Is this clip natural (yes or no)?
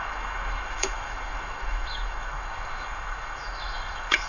no